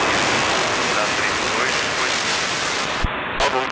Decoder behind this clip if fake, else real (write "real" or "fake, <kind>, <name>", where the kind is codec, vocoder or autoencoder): real